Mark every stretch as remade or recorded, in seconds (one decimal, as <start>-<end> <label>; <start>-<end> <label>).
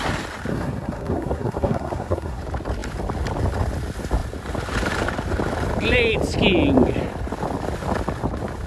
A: 0.0-0.5 recorded; 0.5-2.4 remade; 2.4-8.7 recorded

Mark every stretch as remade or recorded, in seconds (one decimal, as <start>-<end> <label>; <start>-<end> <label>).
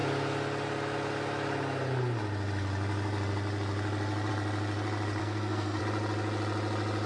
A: 0.0-5.2 recorded; 5.2-5.8 remade; 5.8-7.1 recorded